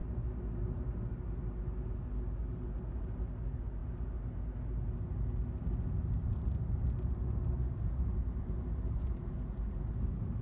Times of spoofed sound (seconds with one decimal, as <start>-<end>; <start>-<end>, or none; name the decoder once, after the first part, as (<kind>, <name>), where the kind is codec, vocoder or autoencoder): none